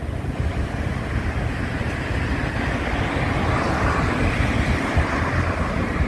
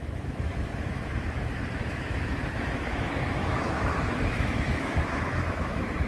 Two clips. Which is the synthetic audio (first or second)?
second